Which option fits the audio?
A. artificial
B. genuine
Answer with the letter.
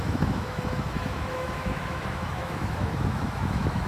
A